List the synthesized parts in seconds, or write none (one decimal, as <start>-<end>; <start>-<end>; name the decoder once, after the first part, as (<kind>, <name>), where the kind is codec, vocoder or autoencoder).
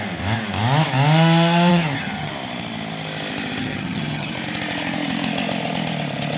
1.7-2.3 (vocoder, HiFi-GAN); 3.6-4.3